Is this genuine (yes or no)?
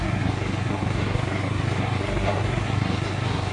no